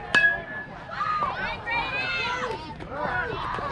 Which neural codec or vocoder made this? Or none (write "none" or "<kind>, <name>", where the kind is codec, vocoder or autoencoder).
none